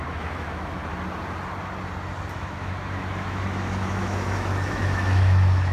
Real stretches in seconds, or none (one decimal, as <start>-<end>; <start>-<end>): 0.8-2.3